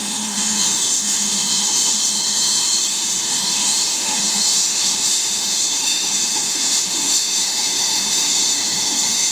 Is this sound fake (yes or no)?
yes